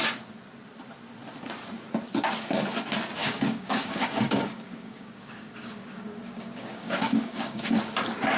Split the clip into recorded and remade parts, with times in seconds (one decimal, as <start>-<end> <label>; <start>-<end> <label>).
0.0-3.2 recorded; 3.2-7.8 remade; 7.8-8.4 recorded